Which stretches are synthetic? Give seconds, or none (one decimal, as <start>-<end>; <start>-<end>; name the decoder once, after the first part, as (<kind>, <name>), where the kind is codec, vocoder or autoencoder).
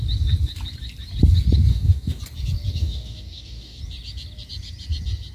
1.7-2.2 (codec, DAC); 2.7-3.8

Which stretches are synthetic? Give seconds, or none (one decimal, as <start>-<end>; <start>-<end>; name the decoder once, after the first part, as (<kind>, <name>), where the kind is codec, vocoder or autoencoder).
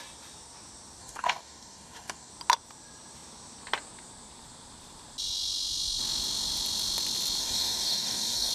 1.0-2.3 (codec, DAC); 7.4-8.5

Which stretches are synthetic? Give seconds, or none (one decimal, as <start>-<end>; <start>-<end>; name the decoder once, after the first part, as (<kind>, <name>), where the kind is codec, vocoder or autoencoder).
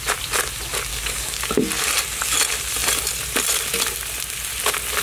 0.9-1.5 (codec, DAC)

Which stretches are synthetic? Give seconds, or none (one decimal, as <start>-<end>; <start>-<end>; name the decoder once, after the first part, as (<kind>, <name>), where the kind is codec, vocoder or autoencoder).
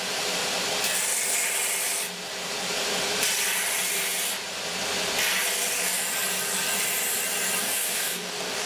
7.6-8.7 (codec, DAC)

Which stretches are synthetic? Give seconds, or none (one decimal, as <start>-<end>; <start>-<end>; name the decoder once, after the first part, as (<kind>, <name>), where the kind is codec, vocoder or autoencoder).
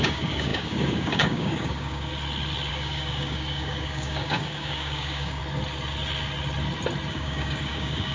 0.0-2.1 (codec, DAC); 2.7-5.4; 7.1-8.1